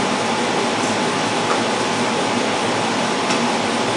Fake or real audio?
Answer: fake